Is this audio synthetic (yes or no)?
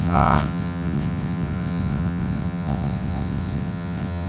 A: yes